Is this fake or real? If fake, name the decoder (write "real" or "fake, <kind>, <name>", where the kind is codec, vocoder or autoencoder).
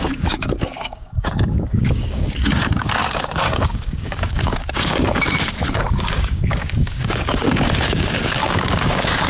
fake, codec, DAC